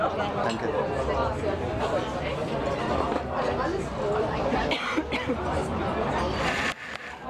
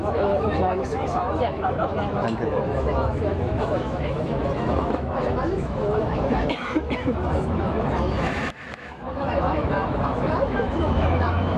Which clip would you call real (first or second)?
first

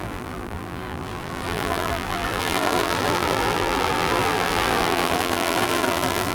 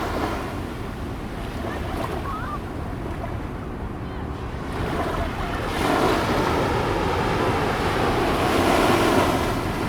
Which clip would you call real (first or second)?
second